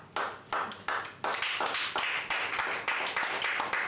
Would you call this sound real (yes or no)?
yes